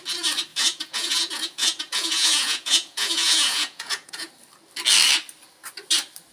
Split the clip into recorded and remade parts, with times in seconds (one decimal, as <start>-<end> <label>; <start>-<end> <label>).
0.0-0.5 recorded; 0.5-4.3 remade; 4.3-6.3 recorded